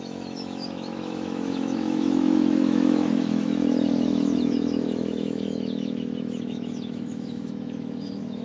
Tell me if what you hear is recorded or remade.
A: remade